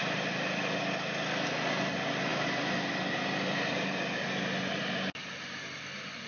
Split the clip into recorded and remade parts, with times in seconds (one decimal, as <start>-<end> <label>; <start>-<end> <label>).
0.0-0.8 remade; 0.8-2.3 recorded; 2.3-6.3 remade